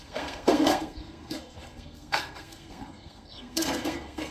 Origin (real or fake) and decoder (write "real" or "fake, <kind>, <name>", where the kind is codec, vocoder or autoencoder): fake, codec, SNAC